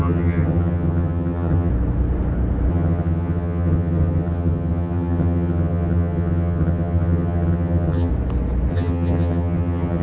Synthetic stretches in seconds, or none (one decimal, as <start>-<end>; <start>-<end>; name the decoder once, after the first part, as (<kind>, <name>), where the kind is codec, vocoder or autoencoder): 0.0-1.7 (vocoder, HiFi-GAN); 2.7-8.1; 8.7-10.0